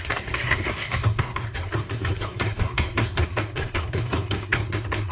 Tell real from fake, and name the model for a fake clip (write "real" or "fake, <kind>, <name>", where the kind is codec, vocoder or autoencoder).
fake, codec, SNAC